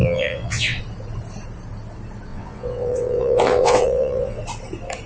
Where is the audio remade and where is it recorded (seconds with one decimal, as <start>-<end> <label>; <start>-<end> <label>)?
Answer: 0.0-0.8 remade; 0.8-2.3 recorded; 2.3-4.4 remade; 4.4-5.1 recorded

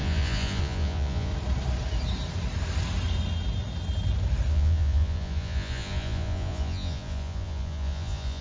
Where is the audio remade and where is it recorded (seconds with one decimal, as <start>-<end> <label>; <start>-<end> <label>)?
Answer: 0.0-1.3 remade; 1.3-4.5 recorded; 4.5-8.4 remade

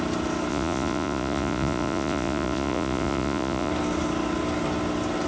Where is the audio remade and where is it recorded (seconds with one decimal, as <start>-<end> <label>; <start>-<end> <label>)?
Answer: 0.0-0.5 recorded; 0.5-3.7 remade; 3.7-5.3 recorded

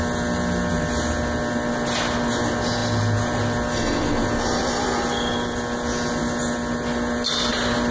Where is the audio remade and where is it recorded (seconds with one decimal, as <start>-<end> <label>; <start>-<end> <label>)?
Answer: 0.0-2.8 recorded; 2.8-7.5 remade; 7.5-7.9 recorded

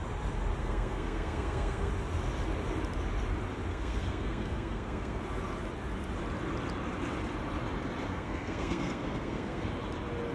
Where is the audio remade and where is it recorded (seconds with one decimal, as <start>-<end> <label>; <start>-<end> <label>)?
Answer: 0.0-0.6 recorded; 0.6-1.9 remade; 1.9-3.7 recorded; 3.7-5.2 remade; 5.2-8.1 recorded; 8.1-9.7 remade; 9.7-10.3 recorded

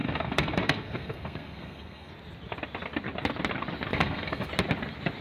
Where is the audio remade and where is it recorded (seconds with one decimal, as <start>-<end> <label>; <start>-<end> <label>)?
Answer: 0.0-2.1 remade; 2.1-3.9 recorded; 3.9-4.5 remade; 4.5-5.2 recorded